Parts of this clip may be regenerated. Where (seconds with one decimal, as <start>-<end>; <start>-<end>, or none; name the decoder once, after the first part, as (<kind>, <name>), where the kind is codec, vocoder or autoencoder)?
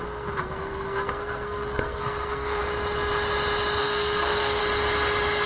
0.0-2.6 (codec, SNAC); 3.8-4.6